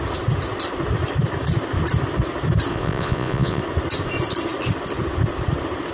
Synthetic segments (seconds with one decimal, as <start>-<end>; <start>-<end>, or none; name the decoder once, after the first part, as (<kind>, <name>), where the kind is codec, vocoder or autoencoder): 2.7-3.6 (vocoder, Vocos)